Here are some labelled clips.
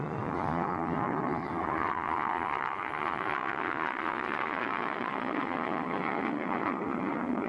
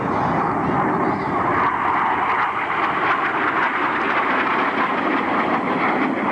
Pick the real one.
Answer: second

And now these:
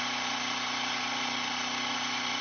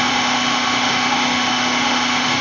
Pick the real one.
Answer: first